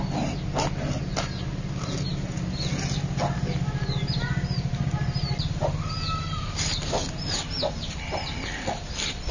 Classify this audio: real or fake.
real